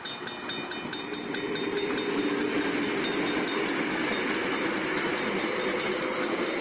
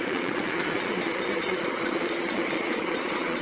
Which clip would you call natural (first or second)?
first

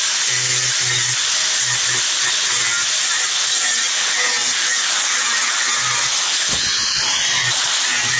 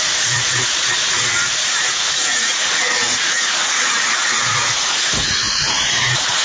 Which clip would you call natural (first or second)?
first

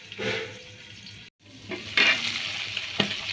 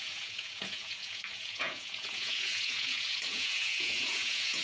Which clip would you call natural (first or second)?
first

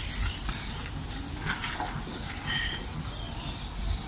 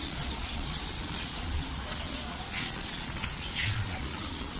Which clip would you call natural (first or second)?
first